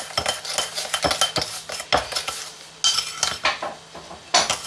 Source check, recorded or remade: recorded